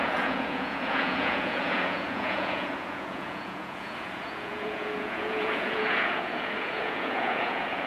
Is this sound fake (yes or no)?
yes